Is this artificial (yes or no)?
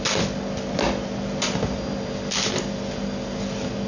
no